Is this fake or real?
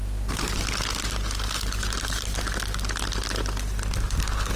real